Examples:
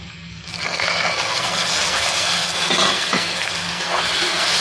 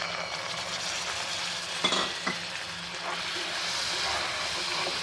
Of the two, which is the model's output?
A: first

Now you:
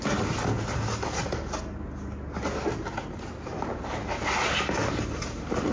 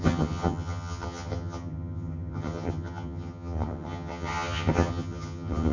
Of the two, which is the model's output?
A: second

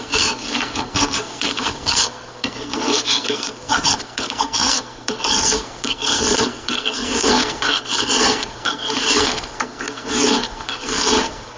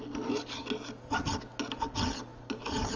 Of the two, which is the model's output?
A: first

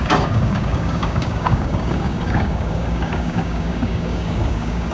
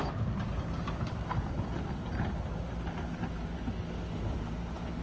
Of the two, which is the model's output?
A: first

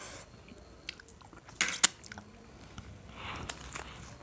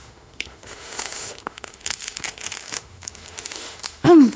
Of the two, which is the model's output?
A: second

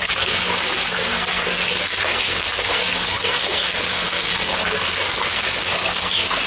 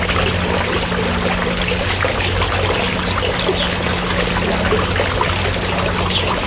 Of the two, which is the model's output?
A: first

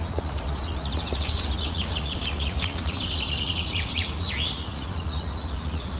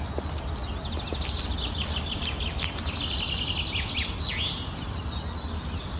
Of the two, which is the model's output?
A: first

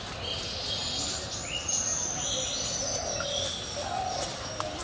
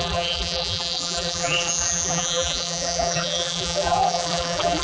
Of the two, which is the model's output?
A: second